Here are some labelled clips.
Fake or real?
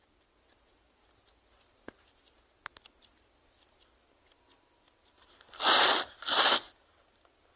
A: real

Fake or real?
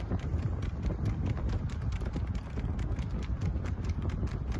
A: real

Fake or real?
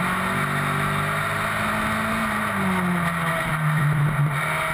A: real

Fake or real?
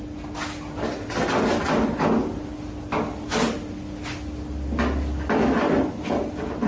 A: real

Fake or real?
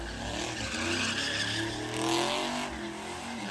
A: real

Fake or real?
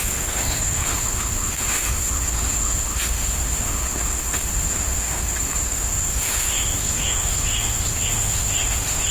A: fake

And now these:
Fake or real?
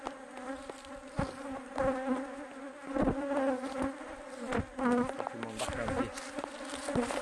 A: real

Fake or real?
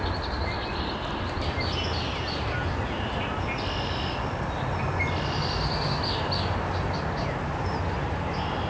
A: real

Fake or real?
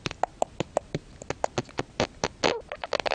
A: real